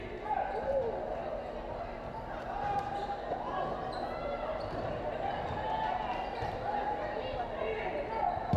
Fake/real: real